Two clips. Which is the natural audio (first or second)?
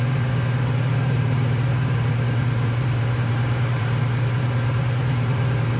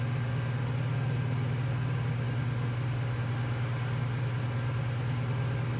second